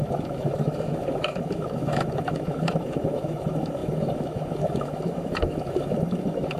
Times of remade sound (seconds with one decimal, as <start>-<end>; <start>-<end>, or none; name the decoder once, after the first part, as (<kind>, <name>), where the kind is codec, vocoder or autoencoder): 0.0-6.6 (autoencoder, DAC-VAE)